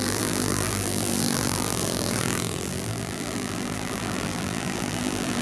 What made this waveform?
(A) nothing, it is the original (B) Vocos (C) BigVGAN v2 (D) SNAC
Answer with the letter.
C